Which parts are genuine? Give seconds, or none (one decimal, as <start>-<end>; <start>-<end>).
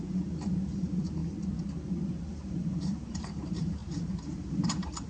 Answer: 1.2-2.2